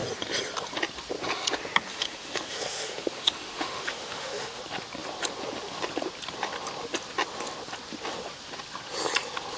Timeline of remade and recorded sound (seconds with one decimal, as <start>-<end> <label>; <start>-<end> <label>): 0.0-1.9 recorded; 1.9-4.6 remade; 4.6-9.6 recorded